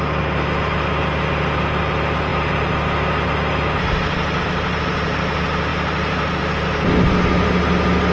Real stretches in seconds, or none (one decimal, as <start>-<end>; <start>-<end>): 0.0-8.1